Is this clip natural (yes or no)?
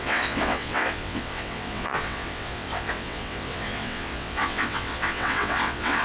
no